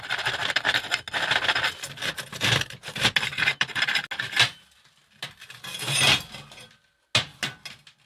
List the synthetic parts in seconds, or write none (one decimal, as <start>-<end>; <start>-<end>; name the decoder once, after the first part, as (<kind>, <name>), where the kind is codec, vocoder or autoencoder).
3.3-3.8 (vocoder, BigVGAN v2)